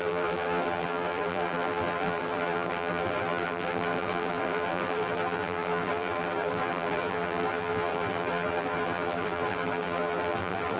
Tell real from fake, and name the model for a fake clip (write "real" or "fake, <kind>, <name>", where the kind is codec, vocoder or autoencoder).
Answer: fake, vocoder, BigVGAN v2